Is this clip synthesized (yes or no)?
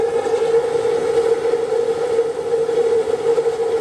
no